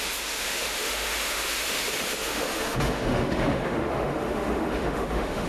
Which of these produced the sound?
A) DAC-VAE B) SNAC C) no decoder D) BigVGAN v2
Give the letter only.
A